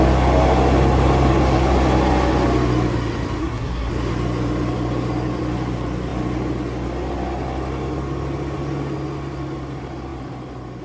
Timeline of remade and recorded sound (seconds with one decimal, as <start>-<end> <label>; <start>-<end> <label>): 0.0-3.4 recorded; 3.4-3.9 remade; 3.9-10.8 recorded